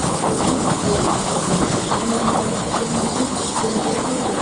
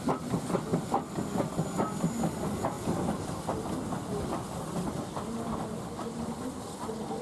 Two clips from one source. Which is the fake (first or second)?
first